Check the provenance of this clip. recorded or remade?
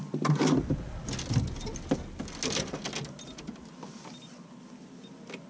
recorded